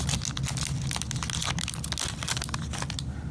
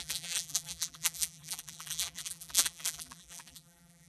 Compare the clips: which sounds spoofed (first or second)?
second